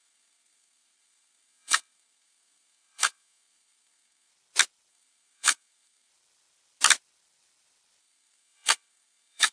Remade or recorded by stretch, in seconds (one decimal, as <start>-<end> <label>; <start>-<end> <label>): 0.0-4.3 remade; 4.3-4.9 recorded; 4.9-6.1 remade; 6.1-8.0 recorded; 8.0-9.5 remade